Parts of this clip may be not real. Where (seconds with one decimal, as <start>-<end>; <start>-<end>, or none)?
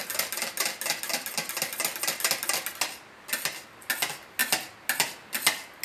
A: none